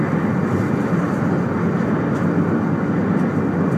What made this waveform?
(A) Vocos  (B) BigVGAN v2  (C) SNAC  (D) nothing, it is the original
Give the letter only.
D